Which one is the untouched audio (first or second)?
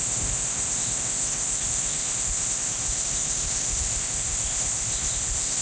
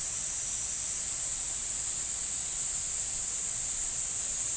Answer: second